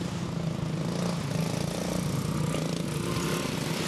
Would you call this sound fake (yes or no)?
no